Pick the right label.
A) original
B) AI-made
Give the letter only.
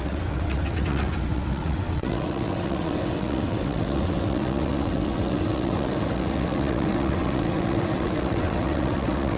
B